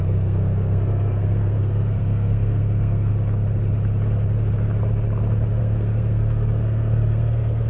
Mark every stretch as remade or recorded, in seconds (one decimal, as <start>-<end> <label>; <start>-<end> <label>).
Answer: 0.0-3.1 remade; 3.1-5.6 recorded; 5.6-7.7 remade